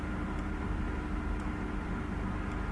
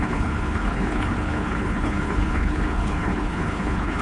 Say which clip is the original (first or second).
first